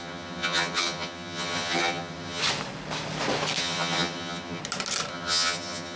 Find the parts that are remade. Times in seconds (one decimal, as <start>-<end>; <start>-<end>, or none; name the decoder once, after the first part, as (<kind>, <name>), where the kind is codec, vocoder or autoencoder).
0.0-2.4 (vocoder, HiFi-GAN); 3.6-4.6; 5.1-6.0